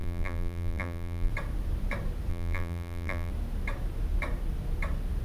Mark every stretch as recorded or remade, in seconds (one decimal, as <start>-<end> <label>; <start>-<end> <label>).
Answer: 0.0-1.3 remade; 1.3-2.3 recorded; 2.3-3.3 remade; 3.3-5.2 recorded